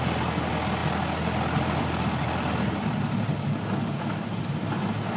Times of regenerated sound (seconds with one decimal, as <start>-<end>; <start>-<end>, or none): none

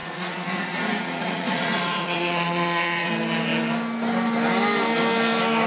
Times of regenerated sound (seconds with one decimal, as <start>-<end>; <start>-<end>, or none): 0.0-3.1

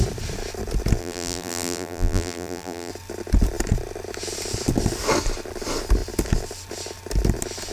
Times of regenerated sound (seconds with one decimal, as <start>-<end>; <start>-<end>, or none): 1.0-2.9

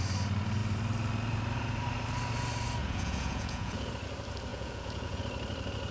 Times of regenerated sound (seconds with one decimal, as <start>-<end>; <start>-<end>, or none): 2.8-3.9; 4.5-5.2

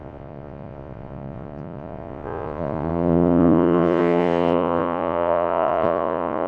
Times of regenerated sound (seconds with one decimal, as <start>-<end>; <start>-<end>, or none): 0.0-6.5

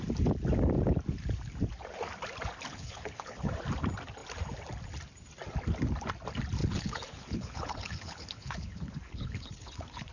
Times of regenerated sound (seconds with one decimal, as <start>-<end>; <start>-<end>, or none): 2.7-3.5; 6.6-10.1